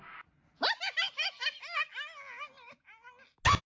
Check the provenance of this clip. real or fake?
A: real